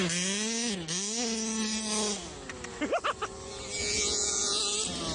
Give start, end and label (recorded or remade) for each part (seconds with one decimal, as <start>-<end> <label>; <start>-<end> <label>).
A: 0.0-3.8 recorded; 3.8-4.6 remade; 4.6-5.1 recorded